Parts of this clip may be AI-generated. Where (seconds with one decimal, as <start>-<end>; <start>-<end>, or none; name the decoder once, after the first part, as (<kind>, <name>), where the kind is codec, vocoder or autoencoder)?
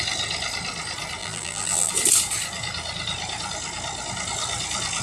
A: 1.2-1.9 (vocoder, BigVGAN v2)